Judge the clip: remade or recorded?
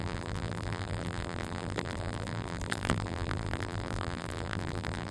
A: remade